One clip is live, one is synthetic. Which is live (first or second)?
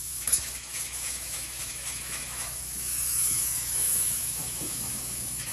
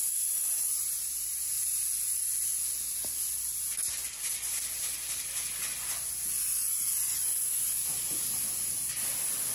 second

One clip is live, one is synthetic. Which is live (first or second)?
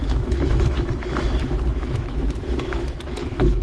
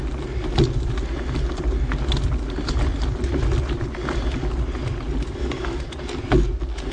second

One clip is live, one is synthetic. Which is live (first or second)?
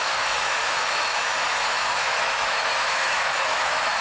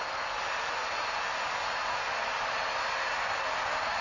second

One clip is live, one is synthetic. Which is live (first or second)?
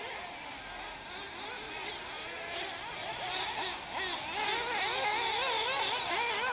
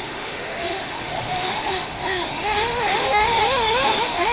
first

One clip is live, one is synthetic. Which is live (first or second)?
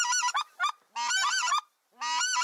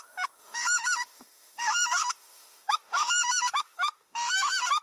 first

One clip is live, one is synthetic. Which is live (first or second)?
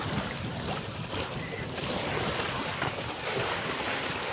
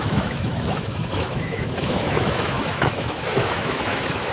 first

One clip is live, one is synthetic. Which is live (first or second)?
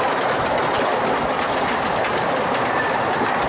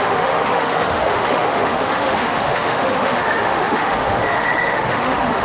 first